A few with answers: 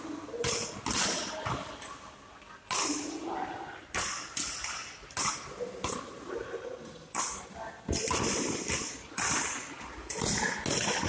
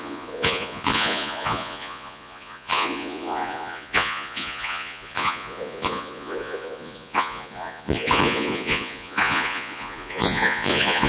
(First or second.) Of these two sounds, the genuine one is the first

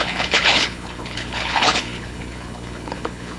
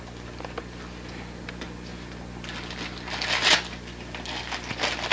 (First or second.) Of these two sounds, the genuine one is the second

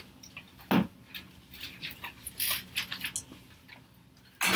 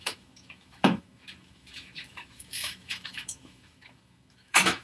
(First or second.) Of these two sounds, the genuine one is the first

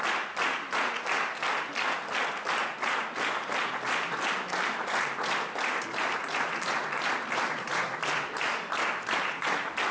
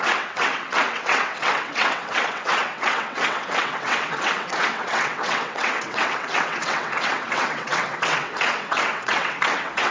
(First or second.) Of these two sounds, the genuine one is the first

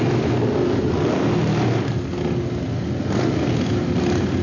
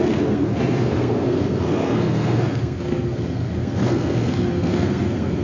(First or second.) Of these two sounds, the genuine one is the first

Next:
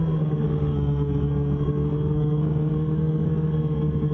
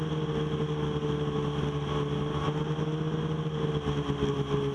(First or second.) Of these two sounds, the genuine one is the second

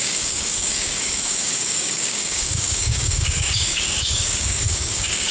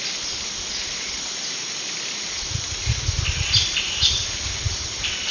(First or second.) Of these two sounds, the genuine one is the second